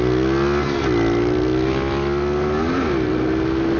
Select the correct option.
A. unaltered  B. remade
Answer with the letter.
A